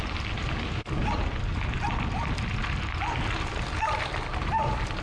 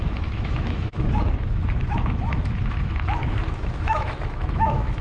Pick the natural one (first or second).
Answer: first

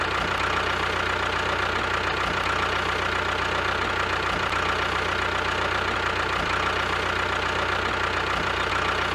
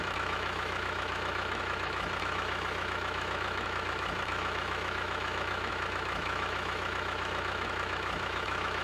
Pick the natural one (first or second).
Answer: first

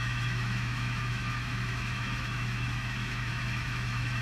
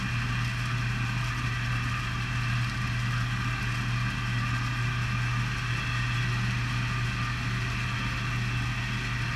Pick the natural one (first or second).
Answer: second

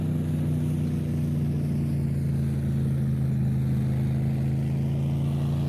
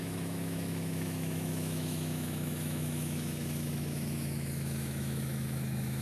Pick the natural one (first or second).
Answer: first